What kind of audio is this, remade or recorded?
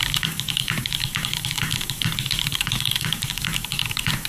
remade